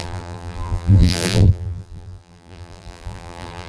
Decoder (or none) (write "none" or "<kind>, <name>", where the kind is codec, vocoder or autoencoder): vocoder, BigVGAN v2